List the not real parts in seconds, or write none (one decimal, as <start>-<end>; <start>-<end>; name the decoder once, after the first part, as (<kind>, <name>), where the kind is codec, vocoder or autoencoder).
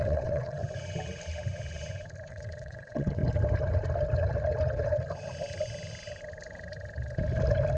0.0-0.6 (vocoder, WaveNeXt); 2.3-3.2